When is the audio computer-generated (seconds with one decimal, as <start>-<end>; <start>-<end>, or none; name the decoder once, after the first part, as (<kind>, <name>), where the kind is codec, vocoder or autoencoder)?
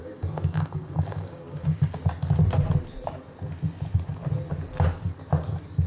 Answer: 0.0-1.9 (codec, DAC)